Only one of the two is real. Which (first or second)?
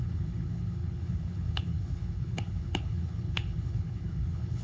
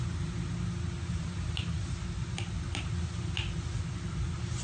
second